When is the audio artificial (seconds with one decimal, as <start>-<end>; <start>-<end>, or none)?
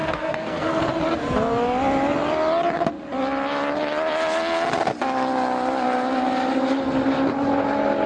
0.0-0.8